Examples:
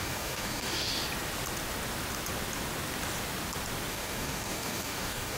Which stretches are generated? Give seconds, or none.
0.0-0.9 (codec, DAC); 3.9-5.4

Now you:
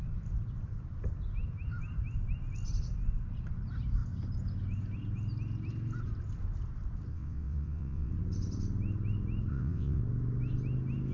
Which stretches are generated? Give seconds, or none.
7.1-8.1 (vocoder, WaveNeXt); 9.5-10.0

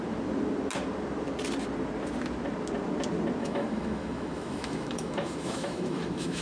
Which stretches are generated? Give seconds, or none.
3.4-6.4 (autoencoder, DAC-VAE)

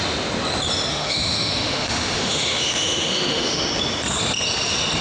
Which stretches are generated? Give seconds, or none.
0.9-3.6 (autoencoder, DAC-VAE)

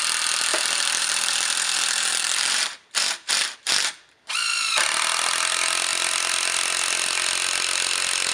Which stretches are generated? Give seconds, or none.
0.5-4.0 (vocoder, BigVGAN v2)

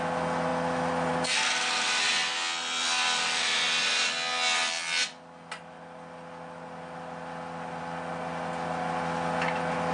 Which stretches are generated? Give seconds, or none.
none